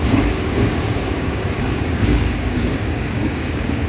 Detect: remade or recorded remade